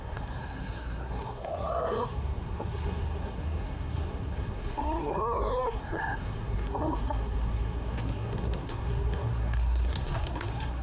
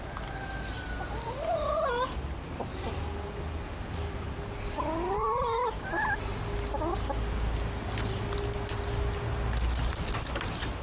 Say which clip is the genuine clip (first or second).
second